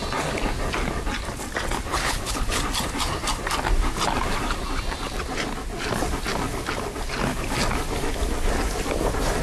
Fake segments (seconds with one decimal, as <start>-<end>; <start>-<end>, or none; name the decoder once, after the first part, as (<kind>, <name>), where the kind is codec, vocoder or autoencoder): 1.9-2.6 (codec, HILCodec)